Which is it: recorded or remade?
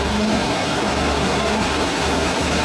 remade